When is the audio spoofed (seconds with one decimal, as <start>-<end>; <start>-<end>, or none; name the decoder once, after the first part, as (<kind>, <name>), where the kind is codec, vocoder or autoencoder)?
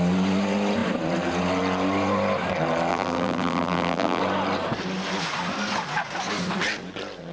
2.9-4.2 (vocoder, BigVGAN v2)